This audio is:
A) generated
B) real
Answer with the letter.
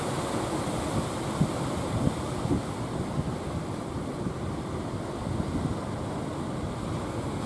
A